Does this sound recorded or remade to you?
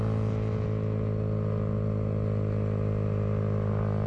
recorded